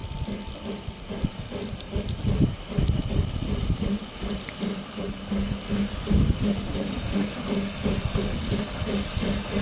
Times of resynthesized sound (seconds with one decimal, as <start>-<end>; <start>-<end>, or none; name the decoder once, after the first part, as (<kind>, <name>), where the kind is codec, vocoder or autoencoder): none